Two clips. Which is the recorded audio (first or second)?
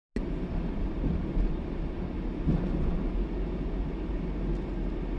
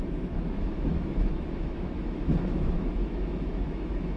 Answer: first